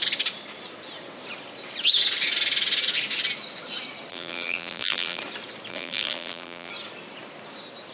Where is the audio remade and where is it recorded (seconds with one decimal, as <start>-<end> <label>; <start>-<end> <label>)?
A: 0.0-4.1 recorded; 4.1-5.2 remade; 5.2-5.7 recorded; 5.7-6.7 remade; 6.7-7.9 recorded